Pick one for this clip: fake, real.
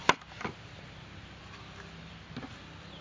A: real